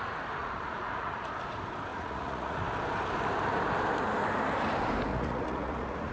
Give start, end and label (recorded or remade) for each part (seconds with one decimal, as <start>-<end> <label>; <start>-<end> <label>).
0.0-0.4 recorded; 0.4-1.2 remade; 1.2-1.9 recorded; 1.9-2.6 remade; 2.6-5.1 recorded; 5.1-6.1 remade